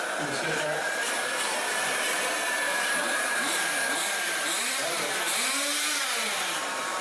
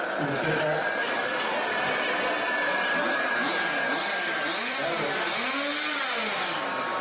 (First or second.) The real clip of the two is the second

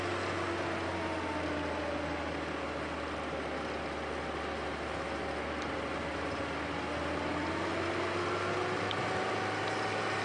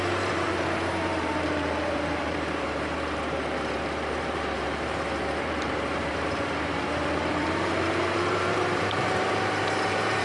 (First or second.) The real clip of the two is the first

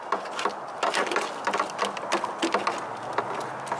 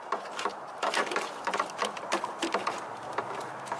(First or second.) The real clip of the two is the first